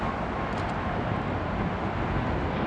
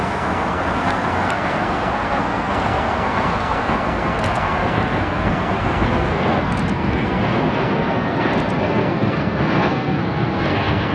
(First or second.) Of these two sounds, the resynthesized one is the second